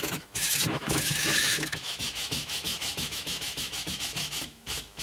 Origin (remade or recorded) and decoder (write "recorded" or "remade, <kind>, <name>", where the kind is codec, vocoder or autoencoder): remade, autoencoder, DAC-VAE